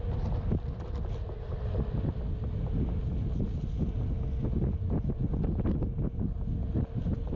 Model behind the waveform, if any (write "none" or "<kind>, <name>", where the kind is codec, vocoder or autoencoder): none